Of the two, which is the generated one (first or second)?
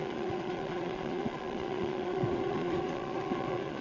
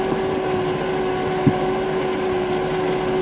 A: first